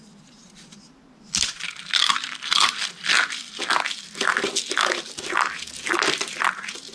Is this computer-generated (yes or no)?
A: no